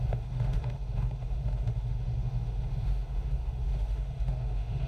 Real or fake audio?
fake